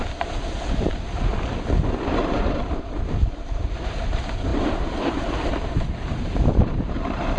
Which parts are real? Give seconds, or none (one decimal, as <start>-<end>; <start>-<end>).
1.3-2.1